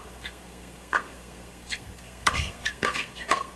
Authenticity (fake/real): fake